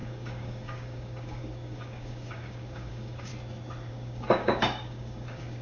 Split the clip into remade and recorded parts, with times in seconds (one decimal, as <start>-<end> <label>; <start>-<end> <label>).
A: 0.0-3.3 remade; 3.3-3.9 recorded; 3.9-5.6 remade